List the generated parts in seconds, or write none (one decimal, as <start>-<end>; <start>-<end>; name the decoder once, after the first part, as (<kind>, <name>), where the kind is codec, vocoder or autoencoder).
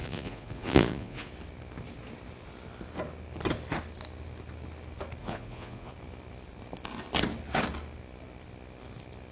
0.0-1.3 (vocoder, Vocos); 5.2-5.9